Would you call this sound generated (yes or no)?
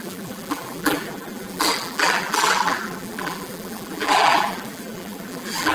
yes